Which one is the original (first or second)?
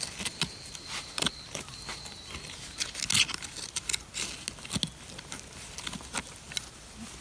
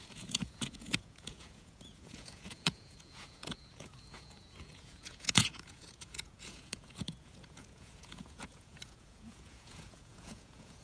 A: first